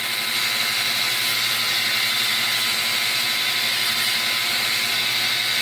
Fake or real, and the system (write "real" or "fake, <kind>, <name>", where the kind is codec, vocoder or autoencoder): real